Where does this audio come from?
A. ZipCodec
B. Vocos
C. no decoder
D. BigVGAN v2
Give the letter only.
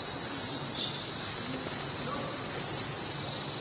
C